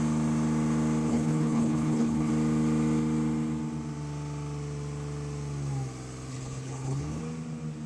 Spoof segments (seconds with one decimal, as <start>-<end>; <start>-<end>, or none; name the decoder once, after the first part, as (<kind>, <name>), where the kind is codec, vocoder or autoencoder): 1.1-2.3 (codec, HILCodec); 6.3-7.2